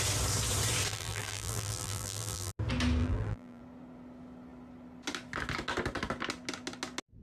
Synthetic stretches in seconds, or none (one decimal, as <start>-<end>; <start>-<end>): 0.9-2.5; 3.0-3.6

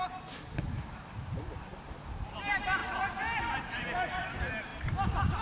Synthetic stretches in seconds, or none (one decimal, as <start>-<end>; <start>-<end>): 0.0-5.4

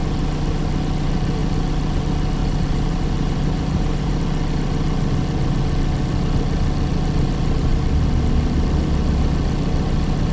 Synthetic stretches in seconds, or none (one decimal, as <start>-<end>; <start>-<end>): 2.4-4.2

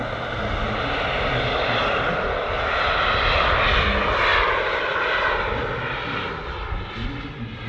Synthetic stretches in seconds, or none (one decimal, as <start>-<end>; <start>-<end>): 4.3-5.2

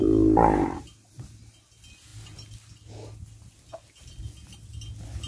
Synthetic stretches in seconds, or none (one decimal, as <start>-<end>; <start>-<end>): none

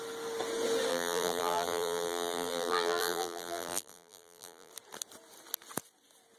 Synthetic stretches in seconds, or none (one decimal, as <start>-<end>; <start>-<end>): 0.9-4.7

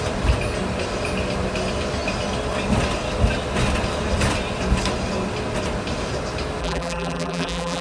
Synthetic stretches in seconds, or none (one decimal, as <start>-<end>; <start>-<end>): 6.6-7.8